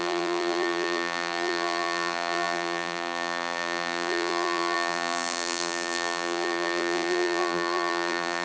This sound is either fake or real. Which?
fake